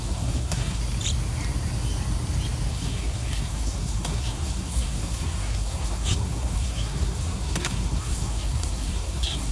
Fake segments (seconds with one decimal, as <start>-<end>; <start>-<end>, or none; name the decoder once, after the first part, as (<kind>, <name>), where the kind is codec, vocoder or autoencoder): 0.0-0.8 (codec, SNAC); 2.7-9.5